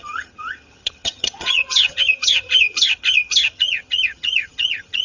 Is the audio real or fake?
fake